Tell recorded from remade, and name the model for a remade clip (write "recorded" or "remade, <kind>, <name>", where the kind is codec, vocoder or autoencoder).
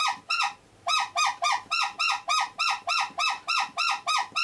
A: recorded